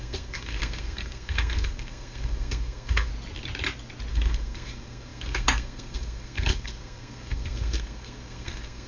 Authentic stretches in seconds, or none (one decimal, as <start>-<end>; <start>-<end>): 3.1-4.1